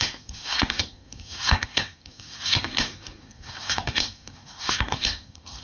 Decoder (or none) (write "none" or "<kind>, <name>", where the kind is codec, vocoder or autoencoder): codec, SNAC